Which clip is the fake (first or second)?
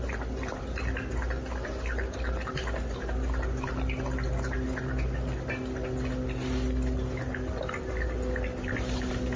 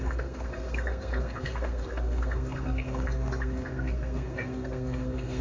second